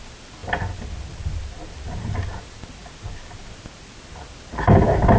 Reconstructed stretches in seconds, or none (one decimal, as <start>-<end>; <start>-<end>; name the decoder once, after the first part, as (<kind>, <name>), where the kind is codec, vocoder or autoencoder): none